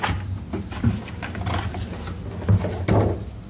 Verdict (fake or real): real